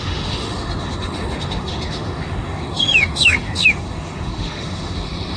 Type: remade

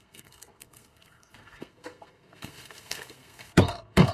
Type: remade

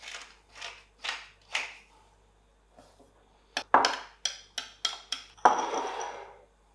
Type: recorded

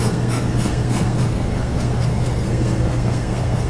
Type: remade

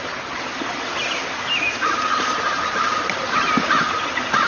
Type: recorded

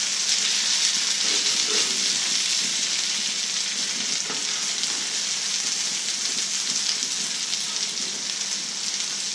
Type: recorded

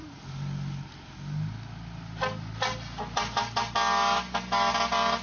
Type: recorded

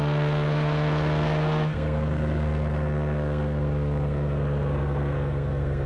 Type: remade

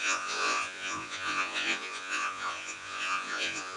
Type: remade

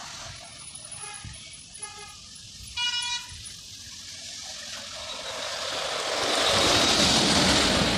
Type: recorded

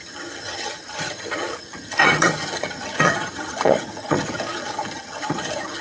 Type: remade